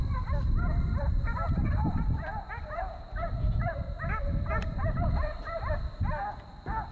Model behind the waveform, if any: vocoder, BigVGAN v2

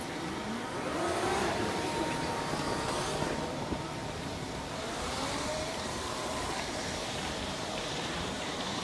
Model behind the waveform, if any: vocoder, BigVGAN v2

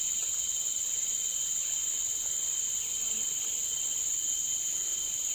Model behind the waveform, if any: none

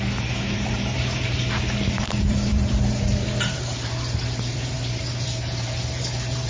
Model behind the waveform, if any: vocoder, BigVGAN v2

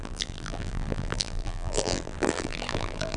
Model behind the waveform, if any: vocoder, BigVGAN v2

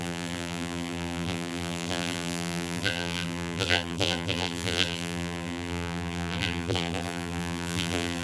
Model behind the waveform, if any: vocoder, BigVGAN v2